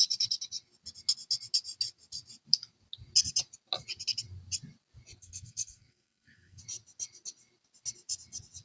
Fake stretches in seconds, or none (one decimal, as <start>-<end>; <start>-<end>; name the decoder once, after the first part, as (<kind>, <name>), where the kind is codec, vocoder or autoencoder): 5.2-6.6 (codec, SNAC)